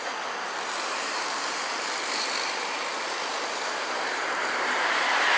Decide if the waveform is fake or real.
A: fake